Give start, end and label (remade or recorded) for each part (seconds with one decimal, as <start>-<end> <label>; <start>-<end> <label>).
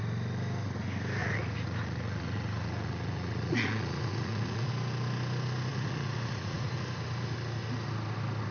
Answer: 0.0-1.2 recorded; 1.2-4.7 remade; 4.7-5.7 recorded; 5.7-6.7 remade; 6.7-8.5 recorded